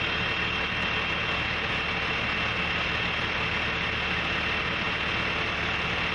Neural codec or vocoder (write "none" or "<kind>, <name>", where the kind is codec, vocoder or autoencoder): none